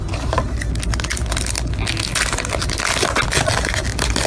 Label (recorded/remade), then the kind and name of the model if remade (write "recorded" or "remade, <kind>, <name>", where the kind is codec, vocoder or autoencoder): recorded